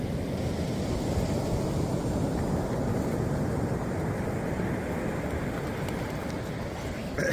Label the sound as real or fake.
real